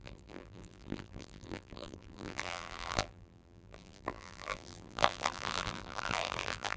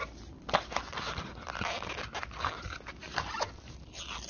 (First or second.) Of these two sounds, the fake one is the first